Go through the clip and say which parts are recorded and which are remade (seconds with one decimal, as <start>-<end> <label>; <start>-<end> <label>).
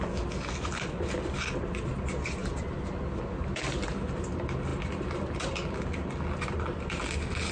0.0-7.5 recorded